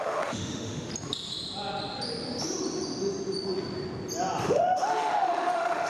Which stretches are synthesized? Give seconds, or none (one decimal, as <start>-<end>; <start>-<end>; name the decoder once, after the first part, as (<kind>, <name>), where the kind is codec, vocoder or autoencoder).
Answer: 0.0-0.9 (autoencoder, DAC-VAE); 4.4-5.9